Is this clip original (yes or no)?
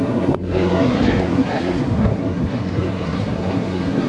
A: no